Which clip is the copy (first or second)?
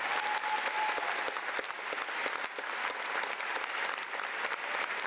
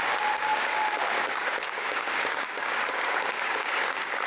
second